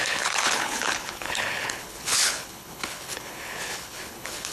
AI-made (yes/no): yes